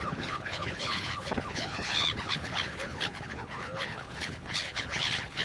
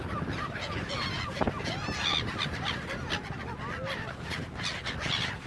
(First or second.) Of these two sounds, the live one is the second